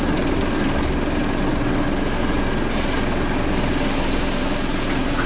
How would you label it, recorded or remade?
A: recorded